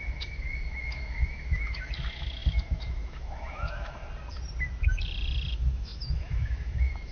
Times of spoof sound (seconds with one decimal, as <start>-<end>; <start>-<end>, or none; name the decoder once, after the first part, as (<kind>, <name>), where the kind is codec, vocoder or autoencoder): 0.0-4.0 (autoencoder, DAC-VAE); 5.5-7.1